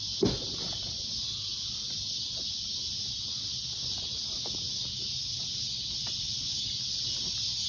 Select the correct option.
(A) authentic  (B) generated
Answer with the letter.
A